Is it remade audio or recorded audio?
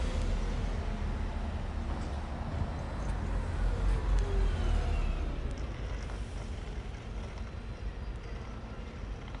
recorded